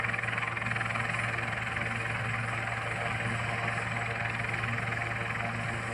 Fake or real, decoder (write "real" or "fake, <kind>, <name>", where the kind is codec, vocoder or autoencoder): real